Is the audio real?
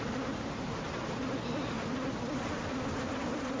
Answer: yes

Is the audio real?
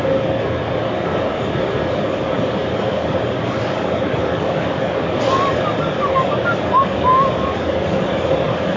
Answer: no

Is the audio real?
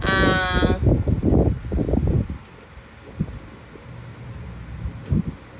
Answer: yes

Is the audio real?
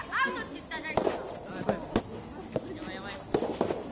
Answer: yes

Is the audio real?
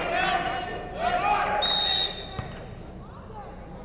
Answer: yes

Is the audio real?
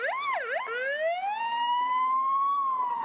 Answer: yes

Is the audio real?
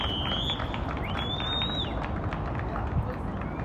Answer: yes